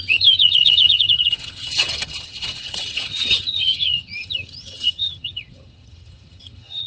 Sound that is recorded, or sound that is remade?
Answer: remade